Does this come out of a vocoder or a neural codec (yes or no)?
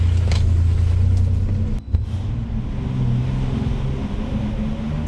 no